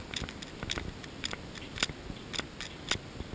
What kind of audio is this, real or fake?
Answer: real